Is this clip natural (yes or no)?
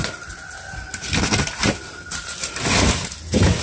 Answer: yes